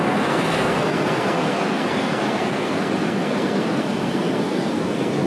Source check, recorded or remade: remade